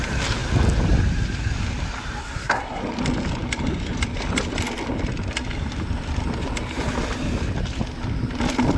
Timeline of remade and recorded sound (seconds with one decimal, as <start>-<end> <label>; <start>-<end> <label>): 0.0-2.2 recorded; 2.2-2.8 remade; 2.8-8.8 recorded